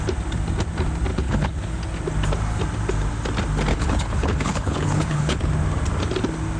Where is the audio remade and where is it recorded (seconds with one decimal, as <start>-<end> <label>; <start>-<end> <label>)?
0.0-1.1 recorded; 1.1-1.8 remade; 1.8-3.7 recorded; 3.7-5.5 remade; 5.5-6.6 recorded